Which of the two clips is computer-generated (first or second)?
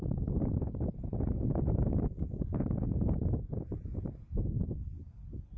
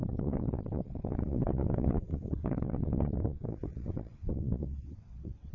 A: second